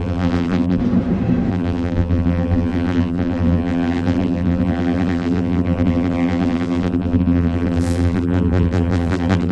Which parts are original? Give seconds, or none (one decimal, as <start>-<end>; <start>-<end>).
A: 0.8-1.5